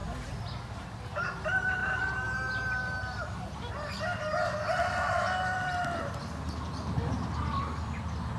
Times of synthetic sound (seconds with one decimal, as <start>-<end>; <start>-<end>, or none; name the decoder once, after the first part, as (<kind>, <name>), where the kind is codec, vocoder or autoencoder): none